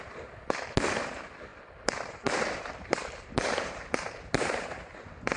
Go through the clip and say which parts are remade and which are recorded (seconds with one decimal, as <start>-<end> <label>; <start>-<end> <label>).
0.0-1.5 recorded; 1.5-4.7 remade; 4.7-5.4 recorded